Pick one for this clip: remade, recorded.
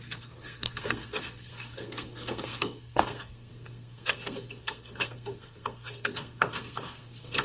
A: remade